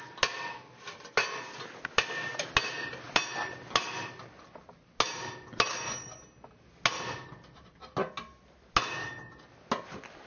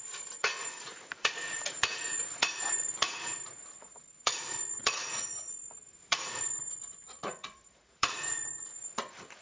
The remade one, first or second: second